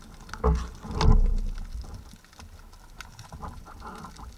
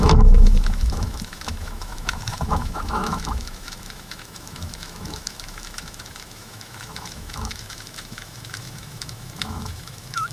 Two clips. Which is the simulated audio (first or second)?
second